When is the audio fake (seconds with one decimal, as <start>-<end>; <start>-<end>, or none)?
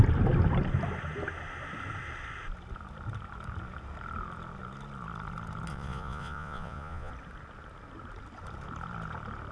5.7-7.1